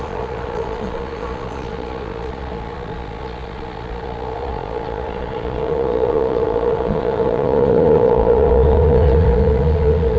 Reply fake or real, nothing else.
fake